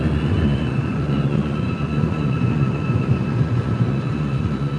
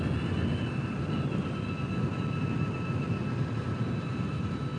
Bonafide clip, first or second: second